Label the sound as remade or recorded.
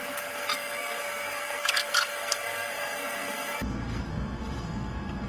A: remade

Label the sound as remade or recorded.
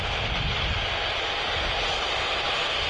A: recorded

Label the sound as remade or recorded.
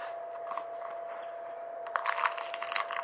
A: recorded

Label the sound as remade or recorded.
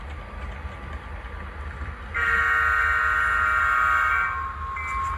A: recorded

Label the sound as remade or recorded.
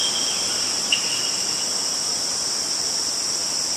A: recorded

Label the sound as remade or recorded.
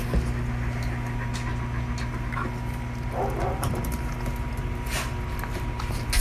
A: recorded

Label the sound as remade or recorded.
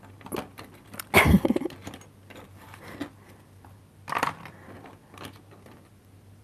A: recorded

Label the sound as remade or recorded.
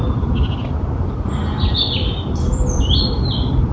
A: remade